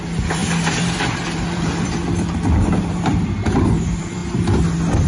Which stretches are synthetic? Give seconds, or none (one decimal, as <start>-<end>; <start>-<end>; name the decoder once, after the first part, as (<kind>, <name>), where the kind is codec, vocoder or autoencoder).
0.0-4.2 (vocoder, BigVGAN v2)